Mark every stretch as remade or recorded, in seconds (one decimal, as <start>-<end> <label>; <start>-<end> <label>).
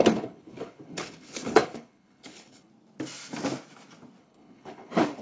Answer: 0.0-2.7 remade; 2.7-4.2 recorded; 4.2-5.2 remade